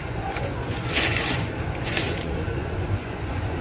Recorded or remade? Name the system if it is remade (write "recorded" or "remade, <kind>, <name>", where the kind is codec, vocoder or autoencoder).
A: remade, vocoder, Vocos